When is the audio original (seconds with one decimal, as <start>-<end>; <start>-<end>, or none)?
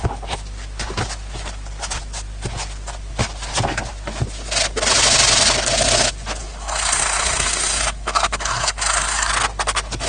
0.0-6.4; 9.3-10.1